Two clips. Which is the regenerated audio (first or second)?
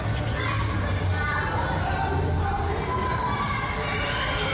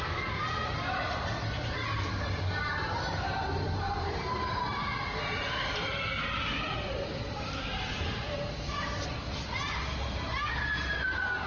second